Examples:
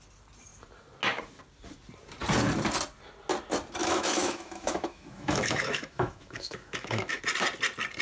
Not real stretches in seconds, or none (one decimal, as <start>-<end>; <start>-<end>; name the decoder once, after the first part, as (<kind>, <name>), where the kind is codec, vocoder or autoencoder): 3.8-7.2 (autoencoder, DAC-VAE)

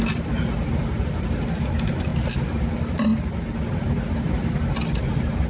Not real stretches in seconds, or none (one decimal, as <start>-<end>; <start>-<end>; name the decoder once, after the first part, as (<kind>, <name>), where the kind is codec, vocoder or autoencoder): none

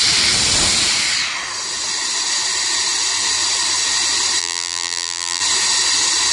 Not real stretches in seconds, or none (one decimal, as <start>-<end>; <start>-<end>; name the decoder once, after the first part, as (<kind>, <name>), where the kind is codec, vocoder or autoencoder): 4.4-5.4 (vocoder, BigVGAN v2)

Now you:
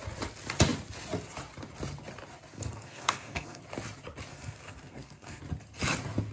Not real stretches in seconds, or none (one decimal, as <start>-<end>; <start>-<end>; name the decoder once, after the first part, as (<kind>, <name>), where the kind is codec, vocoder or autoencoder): 2.5-3.6 (codec, SNAC); 4.3-5.4

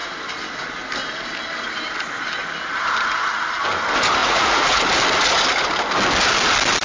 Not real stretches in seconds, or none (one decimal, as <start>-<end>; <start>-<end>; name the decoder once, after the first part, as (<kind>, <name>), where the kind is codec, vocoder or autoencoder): 4.2-4.8 (vocoder, Vocos)

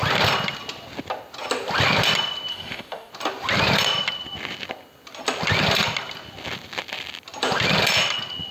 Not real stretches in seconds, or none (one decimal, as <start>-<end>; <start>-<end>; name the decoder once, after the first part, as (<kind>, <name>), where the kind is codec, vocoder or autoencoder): 2.5-3.1 (autoencoder, DAC-VAE)